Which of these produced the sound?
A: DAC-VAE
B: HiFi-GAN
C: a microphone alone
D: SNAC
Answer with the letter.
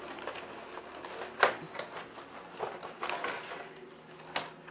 C